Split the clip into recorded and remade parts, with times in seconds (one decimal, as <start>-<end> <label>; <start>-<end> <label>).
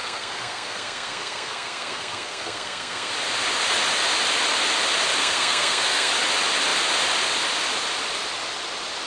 0.0-3.1 remade; 3.1-5.2 recorded; 5.2-6.1 remade; 6.1-9.1 recorded